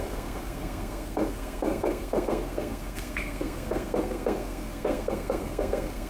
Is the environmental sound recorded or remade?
remade